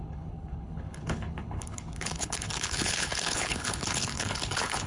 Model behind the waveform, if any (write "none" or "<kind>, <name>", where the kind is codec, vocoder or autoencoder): codec, HILCodec